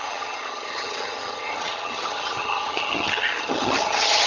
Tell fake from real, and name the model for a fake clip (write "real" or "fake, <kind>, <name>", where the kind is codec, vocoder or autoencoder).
fake, vocoder, HiFi-GAN